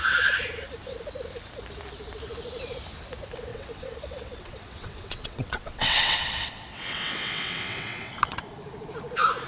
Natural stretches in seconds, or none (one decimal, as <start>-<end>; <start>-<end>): 0.0-3.5; 8.4-9.5